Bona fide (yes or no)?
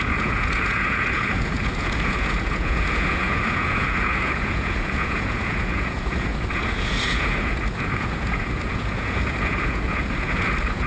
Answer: no